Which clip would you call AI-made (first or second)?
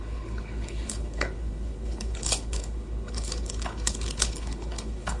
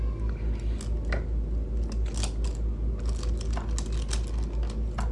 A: first